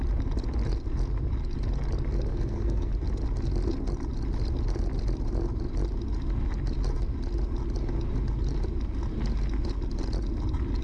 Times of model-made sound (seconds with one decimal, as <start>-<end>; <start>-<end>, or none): 2.3-2.9